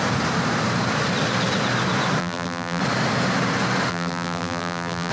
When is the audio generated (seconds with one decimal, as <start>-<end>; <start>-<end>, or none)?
2.2-2.8; 3.9-5.1